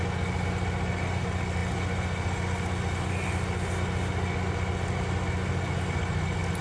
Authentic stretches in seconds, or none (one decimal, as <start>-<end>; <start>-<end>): 0.0-6.6